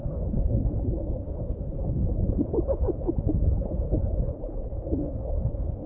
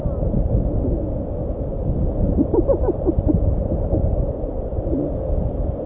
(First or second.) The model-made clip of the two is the first